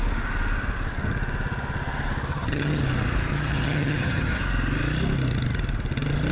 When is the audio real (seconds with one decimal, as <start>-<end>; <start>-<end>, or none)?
0.0-2.3; 2.8-3.3; 4.4-6.3